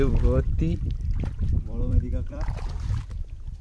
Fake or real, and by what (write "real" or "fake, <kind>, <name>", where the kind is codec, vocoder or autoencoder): fake, vocoder, BigVGAN v2